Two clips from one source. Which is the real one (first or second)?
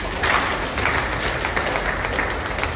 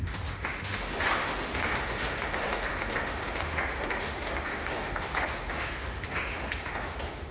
first